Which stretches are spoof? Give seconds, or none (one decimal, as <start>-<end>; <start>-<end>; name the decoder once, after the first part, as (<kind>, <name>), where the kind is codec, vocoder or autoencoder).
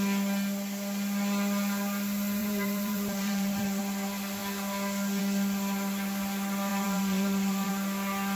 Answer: 2.4-3.8 (vocoder, BigVGAN v2); 6.7-7.7